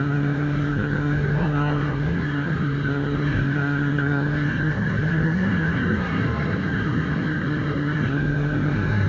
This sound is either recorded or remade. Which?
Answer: remade